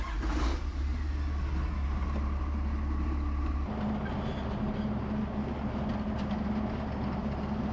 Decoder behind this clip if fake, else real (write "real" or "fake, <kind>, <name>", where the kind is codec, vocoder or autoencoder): real